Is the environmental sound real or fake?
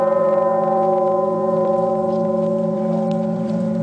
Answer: fake